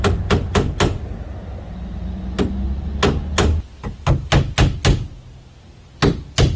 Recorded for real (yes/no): yes